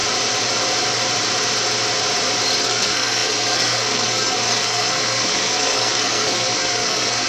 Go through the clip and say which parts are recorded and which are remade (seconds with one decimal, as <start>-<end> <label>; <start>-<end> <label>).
0.0-2.6 recorded; 2.6-7.3 remade